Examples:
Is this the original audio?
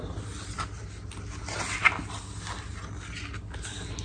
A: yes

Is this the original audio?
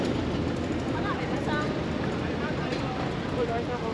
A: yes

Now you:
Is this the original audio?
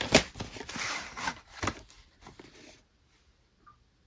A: yes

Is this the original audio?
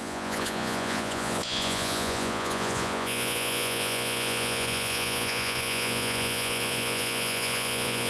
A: no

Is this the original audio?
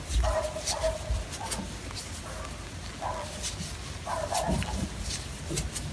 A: yes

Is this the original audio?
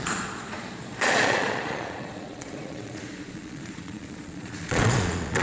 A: no